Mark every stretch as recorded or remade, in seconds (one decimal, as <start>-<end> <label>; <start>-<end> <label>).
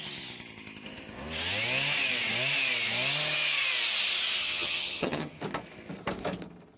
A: 0.0-4.4 recorded; 4.4-5.4 remade; 5.4-6.8 recorded